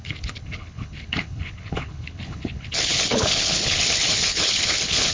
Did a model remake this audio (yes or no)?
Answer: yes